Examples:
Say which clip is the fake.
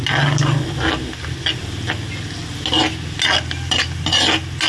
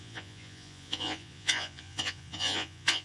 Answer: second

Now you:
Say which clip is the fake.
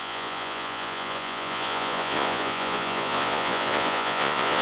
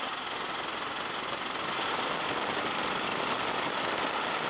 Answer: first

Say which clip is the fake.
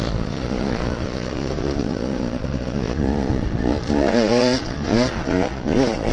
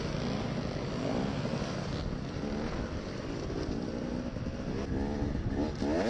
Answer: first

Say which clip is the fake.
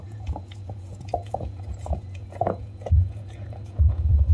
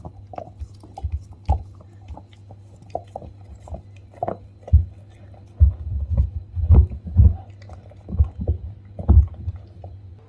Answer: first